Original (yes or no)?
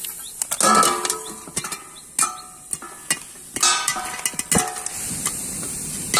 yes